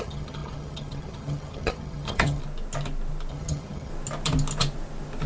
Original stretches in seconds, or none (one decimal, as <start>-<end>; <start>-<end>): 2.4-3.3; 3.9-5.3